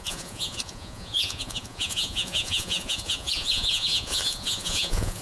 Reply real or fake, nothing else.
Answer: fake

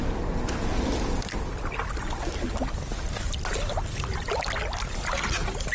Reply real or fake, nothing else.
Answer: real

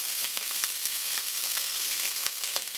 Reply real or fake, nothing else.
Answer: fake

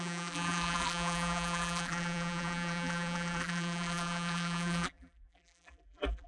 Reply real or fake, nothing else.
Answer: fake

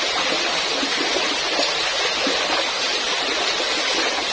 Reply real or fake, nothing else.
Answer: real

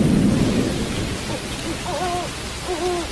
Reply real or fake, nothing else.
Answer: real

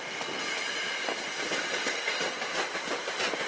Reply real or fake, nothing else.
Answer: real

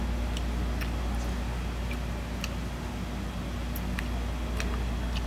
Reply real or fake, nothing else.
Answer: real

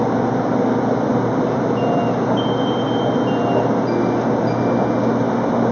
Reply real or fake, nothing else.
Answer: real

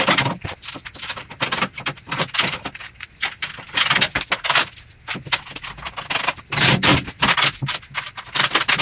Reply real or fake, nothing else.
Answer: real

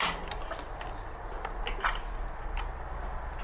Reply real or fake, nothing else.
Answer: real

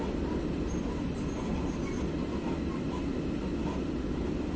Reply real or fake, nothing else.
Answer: real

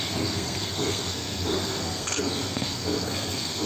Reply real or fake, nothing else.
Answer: fake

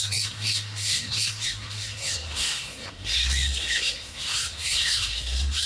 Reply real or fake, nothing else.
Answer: fake